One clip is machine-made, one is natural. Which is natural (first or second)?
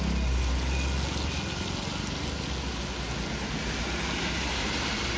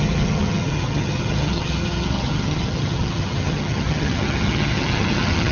first